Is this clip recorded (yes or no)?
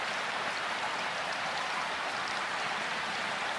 yes